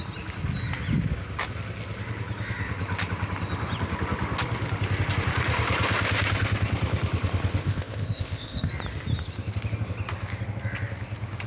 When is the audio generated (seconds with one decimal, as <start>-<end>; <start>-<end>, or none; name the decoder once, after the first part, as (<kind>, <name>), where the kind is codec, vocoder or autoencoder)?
7.6-8.7 (codec, ZipCodec)